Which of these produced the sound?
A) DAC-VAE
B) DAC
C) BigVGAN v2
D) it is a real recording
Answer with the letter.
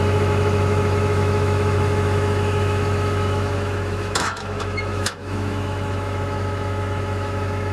A